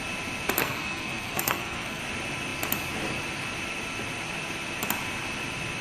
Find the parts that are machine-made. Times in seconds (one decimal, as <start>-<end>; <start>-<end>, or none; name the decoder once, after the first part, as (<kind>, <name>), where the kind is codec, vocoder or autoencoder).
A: 0.6-2.0 (codec, SNAC)